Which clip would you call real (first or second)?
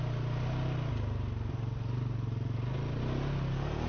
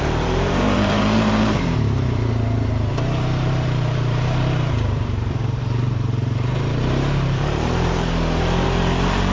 first